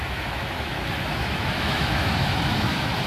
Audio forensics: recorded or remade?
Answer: remade